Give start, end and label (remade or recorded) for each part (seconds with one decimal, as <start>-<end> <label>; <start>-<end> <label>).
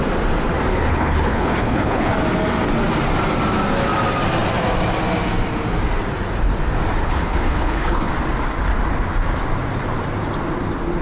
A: 0.0-0.7 recorded; 0.7-2.1 remade; 2.1-7.0 recorded; 7.0-8.1 remade; 8.1-11.0 recorded